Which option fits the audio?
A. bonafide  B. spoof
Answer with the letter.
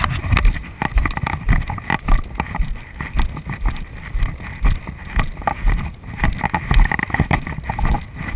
A